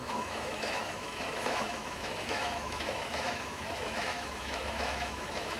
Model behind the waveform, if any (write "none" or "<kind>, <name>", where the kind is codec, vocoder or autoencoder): autoencoder, DAC-VAE